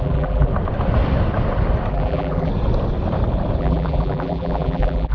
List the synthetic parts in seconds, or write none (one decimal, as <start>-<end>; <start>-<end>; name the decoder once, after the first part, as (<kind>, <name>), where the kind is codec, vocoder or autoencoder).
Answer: 0.0-0.5 (vocoder, BigVGAN v2); 1.9-2.5; 3.6-5.1